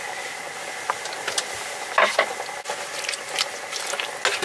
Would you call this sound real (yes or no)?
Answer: yes